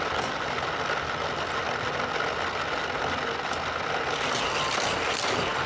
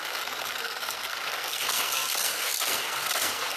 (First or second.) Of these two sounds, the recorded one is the first